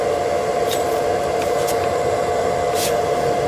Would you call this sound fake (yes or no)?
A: no